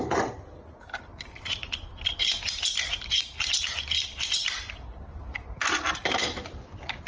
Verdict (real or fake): fake